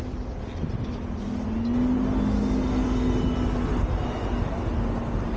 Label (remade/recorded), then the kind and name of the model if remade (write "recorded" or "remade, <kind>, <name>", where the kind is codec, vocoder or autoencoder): recorded